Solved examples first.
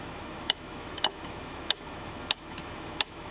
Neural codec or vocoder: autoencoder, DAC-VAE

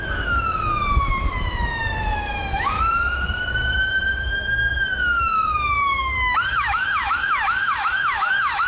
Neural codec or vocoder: autoencoder, DAC-VAE